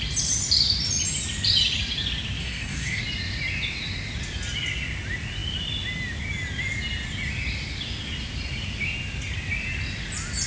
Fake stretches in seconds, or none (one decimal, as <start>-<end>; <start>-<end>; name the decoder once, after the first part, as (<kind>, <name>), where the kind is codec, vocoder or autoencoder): 2.4-3.0 (codec, SNAC)